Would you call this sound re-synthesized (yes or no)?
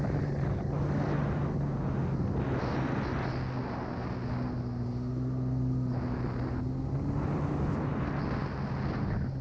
no